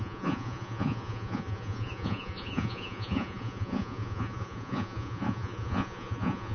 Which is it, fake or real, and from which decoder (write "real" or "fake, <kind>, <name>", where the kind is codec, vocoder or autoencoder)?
fake, vocoder, Vocos